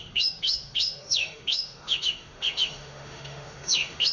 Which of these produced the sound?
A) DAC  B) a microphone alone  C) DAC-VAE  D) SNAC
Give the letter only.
C